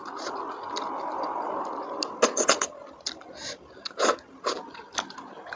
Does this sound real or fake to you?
real